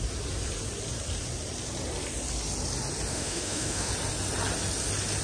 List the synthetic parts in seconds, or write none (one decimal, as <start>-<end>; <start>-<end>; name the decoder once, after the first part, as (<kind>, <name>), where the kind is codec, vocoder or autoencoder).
3.1-3.9 (autoencoder, DAC-VAE)